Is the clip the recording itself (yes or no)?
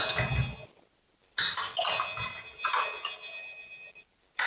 yes